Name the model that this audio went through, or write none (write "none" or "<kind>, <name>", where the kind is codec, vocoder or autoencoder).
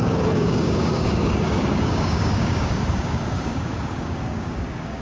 codec, DAC